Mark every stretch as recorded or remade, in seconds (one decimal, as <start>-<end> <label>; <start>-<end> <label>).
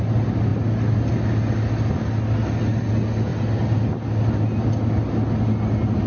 0.0-6.1 recorded